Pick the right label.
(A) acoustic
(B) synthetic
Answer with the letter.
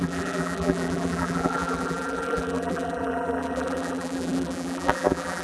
B